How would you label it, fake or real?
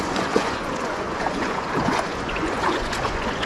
fake